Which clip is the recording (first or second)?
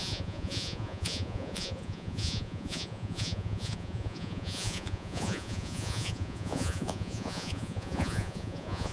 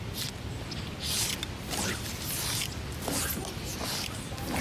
second